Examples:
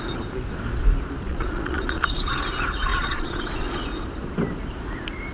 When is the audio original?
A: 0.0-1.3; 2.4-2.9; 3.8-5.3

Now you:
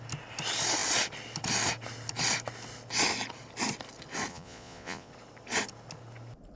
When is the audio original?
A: 0.0-4.3; 5.1-6.6

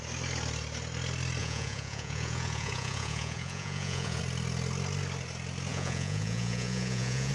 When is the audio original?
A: 0.0-1.4; 4.2-5.7

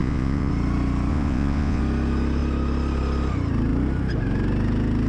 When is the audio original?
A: 0.5-1.1; 1.8-5.1

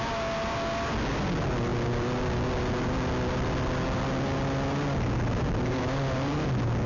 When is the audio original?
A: 0.0-6.9

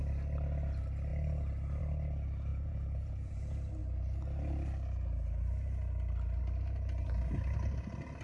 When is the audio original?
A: 0.0-2.5; 3.4-8.2

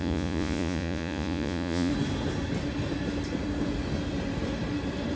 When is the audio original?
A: 1.9-5.2

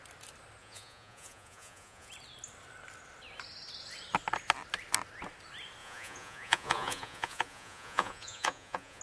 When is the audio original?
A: 0.0-0.6; 2.1-5.8